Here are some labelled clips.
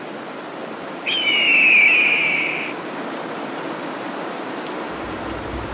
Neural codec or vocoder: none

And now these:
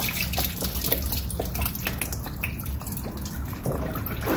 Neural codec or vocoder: none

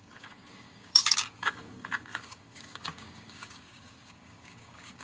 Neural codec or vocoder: codec, DAC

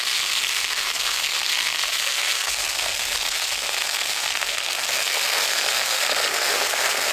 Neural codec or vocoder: codec, SNAC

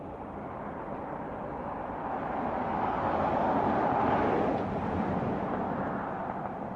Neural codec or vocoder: none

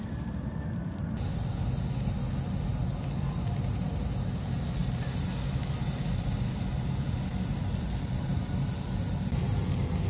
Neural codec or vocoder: none